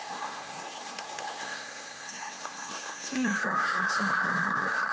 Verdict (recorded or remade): remade